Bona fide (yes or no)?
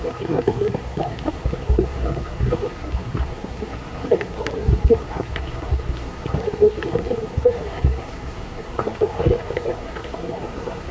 no